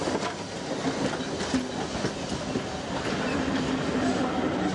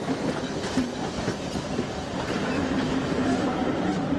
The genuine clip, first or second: first